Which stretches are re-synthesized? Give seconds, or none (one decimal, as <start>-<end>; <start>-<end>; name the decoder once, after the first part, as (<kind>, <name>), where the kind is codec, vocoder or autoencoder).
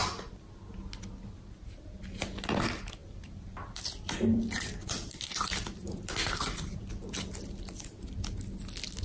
3.0-6.9 (vocoder, BigVGAN v2)